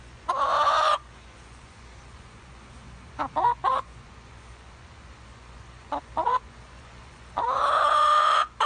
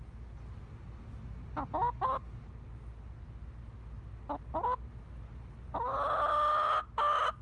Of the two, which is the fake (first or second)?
first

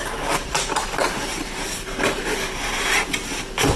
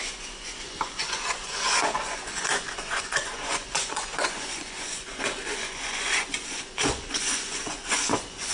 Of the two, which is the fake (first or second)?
second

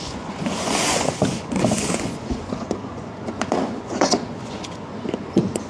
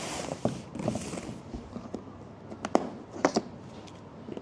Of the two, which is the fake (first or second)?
first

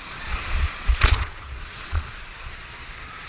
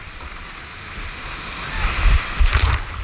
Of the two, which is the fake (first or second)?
first